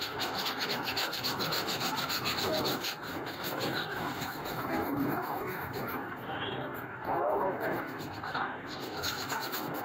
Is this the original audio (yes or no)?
no